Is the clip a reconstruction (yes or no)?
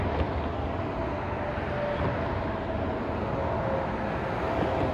no